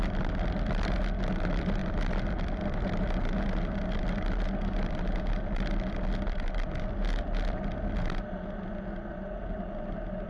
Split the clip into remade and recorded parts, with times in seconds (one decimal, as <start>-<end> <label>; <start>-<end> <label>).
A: 0.0-10.3 recorded